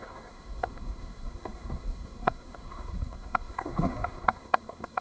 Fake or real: fake